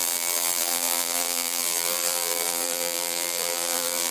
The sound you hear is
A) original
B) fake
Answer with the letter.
B